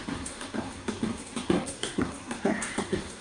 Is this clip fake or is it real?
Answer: fake